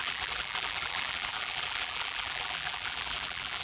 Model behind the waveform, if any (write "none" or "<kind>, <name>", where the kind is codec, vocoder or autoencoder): vocoder, BigVGAN v2